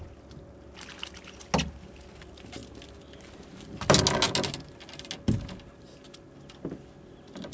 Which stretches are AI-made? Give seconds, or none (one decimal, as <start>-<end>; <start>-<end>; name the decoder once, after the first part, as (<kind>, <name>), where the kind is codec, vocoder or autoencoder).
none